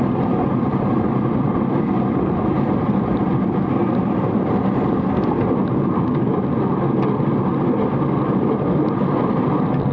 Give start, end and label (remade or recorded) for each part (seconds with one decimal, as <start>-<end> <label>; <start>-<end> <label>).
0.0-9.9 recorded

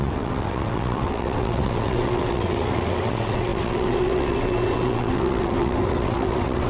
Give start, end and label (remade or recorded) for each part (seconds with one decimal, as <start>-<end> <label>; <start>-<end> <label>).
0.0-6.7 remade

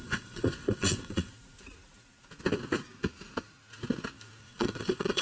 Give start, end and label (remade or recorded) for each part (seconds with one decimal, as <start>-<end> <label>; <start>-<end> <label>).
0.0-1.3 remade; 1.3-4.4 recorded; 4.4-5.2 remade

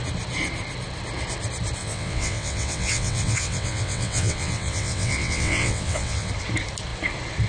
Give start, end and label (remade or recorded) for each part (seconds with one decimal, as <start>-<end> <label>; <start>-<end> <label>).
0.0-1.8 recorded; 1.8-6.3 remade; 6.3-7.5 recorded

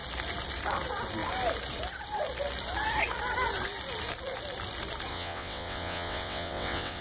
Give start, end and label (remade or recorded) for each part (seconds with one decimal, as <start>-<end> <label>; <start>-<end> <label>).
0.0-5.1 recorded; 5.1-7.0 remade

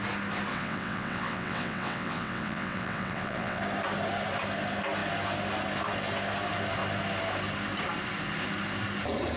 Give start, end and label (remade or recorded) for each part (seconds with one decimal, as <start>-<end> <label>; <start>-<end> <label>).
0.0-0.5 recorded; 0.5-3.6 remade; 3.6-9.4 recorded

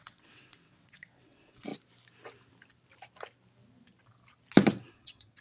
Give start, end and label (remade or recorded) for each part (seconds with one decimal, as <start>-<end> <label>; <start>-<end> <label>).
0.0-1.7 remade; 1.7-4.9 recorded; 4.9-5.4 remade